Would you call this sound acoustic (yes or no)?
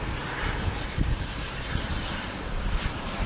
no